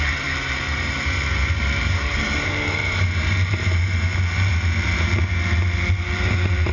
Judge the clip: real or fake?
fake